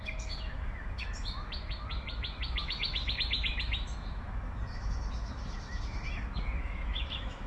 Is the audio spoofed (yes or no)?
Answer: yes